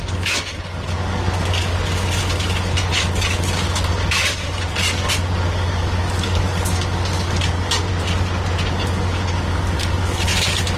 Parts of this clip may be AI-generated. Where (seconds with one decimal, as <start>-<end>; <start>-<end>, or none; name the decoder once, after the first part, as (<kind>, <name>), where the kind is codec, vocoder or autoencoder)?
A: 0.0-7.9 (codec, DAC); 8.7-10.8